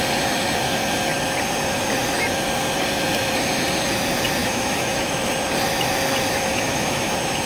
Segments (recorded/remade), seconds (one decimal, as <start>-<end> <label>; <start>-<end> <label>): 0.0-4.4 recorded; 4.4-5.3 remade; 5.3-6.5 recorded; 6.5-7.1 remade; 7.1-7.5 recorded